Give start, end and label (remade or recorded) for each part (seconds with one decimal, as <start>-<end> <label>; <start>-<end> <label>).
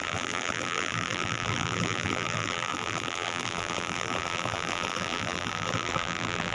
0.0-6.5 remade